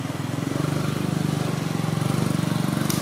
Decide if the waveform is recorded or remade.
recorded